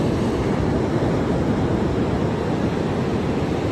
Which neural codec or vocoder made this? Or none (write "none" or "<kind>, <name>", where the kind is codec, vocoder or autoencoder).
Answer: none